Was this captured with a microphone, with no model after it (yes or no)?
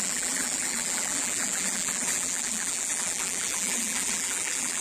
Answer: no